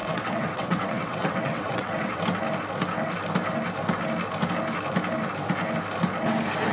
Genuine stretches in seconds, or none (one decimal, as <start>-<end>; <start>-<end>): 2.2-6.7